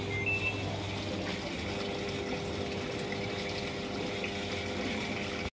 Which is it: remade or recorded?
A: recorded